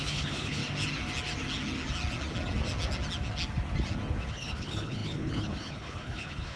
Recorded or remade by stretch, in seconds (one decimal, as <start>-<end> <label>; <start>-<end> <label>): 0.0-0.6 remade; 0.6-4.3 recorded; 4.3-6.6 remade